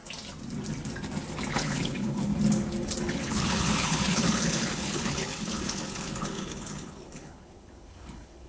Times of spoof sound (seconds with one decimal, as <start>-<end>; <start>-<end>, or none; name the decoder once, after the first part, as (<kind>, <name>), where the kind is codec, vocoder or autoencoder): 1.5-2.3 (codec, HILCodec); 3.1-8.5